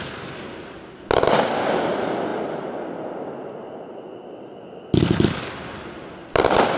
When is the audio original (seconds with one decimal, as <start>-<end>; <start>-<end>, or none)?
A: 0.0-6.8